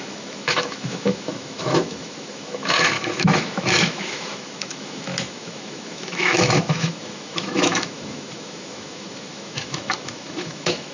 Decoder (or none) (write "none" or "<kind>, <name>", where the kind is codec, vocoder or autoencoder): autoencoder, DAC-VAE